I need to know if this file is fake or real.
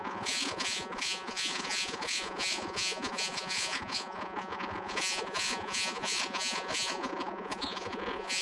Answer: fake